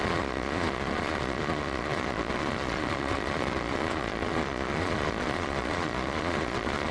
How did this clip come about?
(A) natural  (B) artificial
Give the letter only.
B